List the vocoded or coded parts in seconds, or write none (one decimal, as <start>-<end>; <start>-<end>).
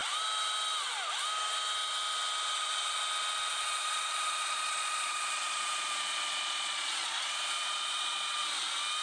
2.5-3.0; 3.5-8.5